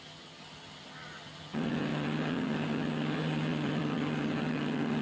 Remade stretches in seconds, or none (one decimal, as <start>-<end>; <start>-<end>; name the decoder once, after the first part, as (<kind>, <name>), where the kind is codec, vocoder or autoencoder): 0.0-5.0 (vocoder, HiFi-GAN)

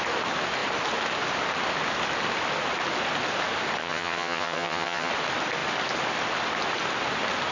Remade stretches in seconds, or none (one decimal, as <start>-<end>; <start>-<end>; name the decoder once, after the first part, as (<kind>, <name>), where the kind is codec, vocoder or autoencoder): 3.8-5.1 (vocoder, HiFi-GAN)

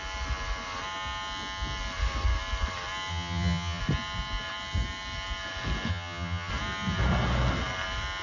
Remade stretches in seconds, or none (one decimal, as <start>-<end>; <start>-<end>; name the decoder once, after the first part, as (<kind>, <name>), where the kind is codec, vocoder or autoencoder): 3.1-3.8 (vocoder, HiFi-GAN); 5.9-6.5

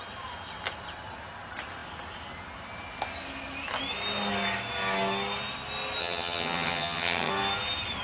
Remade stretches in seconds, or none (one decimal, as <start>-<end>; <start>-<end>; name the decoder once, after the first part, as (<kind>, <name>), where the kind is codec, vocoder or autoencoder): 6.0-7.3 (vocoder, HiFi-GAN)

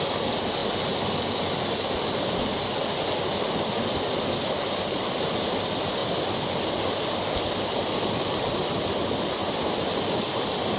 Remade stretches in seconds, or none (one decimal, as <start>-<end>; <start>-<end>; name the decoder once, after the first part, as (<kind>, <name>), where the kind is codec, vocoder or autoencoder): none

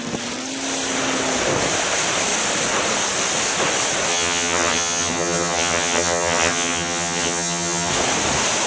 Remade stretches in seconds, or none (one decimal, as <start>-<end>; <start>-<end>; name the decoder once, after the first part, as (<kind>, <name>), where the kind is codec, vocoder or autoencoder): 4.1-7.9 (vocoder, HiFi-GAN)

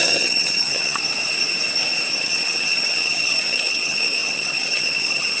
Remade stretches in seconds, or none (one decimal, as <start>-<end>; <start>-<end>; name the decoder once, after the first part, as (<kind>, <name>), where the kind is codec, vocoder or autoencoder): 0.0-1.0 (vocoder, HiFi-GAN); 2.2-5.4